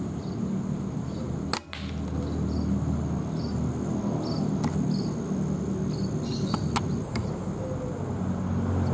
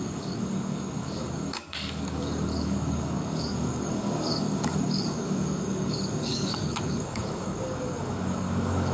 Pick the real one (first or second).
first